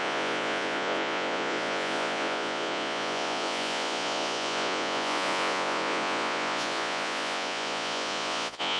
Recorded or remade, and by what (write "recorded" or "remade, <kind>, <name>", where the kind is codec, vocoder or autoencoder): remade, vocoder, Vocos